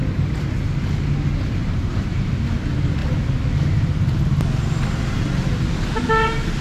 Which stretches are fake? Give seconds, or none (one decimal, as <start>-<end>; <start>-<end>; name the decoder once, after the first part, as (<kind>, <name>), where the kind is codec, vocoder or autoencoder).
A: 1.6-2.3 (vocoder, BigVGAN v2)